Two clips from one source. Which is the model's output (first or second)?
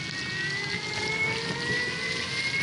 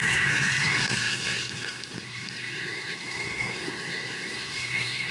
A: second